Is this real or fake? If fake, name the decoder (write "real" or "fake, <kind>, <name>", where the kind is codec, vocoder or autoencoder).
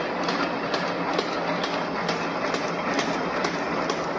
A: real